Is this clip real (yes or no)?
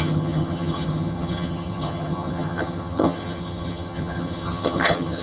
no